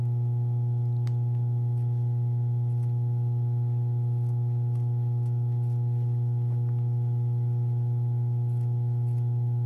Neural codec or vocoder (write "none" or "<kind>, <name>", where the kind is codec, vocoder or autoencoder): none